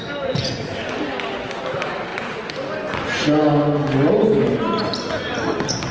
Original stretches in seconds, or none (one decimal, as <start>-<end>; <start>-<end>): 0.0-5.9